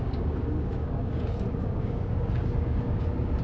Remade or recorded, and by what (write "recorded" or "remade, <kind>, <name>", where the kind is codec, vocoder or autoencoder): remade, codec, DAC